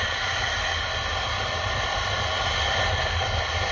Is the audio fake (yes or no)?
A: no